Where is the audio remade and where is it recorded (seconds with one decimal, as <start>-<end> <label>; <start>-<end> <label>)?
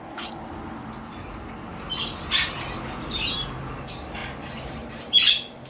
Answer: 0.0-5.7 recorded